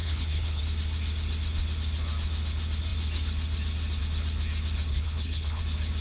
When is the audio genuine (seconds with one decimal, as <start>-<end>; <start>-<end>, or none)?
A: 0.6-4.9; 5.6-6.0